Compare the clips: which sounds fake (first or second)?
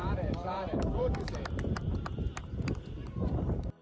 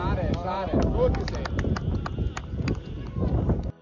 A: first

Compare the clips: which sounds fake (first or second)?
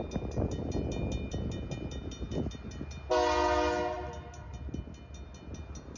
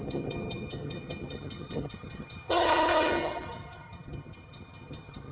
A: second